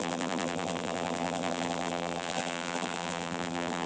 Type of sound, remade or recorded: remade